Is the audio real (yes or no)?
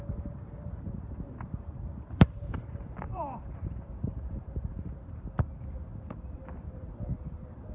no